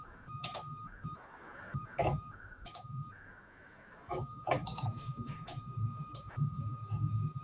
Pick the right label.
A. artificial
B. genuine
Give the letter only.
A